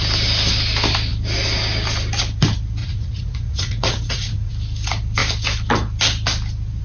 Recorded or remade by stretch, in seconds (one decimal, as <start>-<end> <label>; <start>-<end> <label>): 0.0-2.8 recorded; 2.8-4.5 remade; 4.5-6.8 recorded